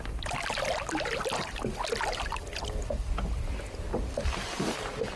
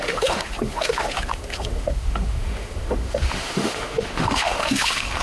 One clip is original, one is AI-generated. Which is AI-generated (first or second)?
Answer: second